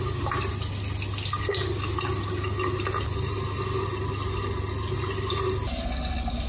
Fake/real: real